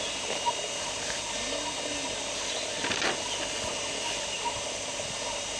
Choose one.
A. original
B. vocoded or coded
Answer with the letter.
A